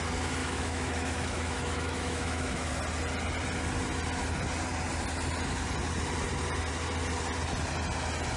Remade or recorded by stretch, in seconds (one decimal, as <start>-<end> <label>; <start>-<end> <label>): 0.0-0.4 recorded; 0.4-2.7 remade; 2.7-8.4 recorded